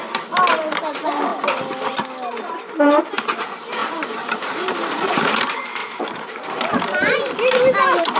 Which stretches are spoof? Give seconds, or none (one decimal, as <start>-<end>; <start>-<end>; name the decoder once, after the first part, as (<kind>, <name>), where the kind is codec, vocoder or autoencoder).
0.0-1.3 (vocoder, BigVGAN v2); 3.0-8.2